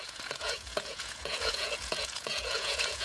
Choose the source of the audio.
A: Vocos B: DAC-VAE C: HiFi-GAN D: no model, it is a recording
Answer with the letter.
A